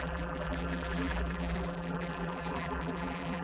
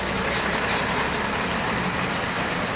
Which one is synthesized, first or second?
first